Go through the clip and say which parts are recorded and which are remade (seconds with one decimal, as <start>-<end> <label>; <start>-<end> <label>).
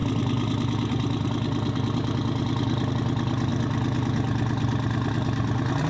0.0-5.9 recorded